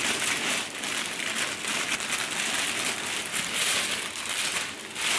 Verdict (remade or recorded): recorded